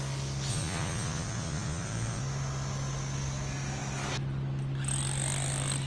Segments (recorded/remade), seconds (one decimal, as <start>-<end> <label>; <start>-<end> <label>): 0.0-0.5 recorded; 0.5-2.2 remade; 2.2-5.9 recorded